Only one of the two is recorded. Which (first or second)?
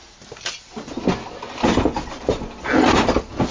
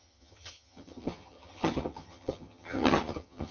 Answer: first